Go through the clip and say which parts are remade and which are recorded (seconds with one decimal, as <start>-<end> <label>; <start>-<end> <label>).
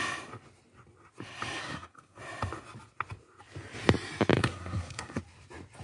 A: 0.0-1.6 recorded; 1.6-2.2 remade; 2.2-4.4 recorded; 4.4-5.2 remade; 5.2-5.8 recorded